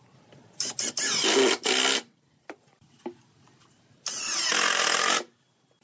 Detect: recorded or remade recorded